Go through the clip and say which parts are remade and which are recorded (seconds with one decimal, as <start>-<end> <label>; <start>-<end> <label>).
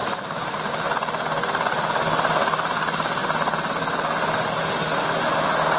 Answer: 0.0-5.8 recorded